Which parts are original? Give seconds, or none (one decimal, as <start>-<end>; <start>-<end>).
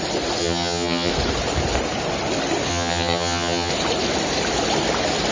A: 0.0-0.4; 1.1-2.7; 3.7-5.3